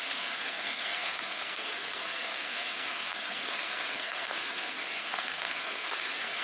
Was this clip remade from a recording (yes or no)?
yes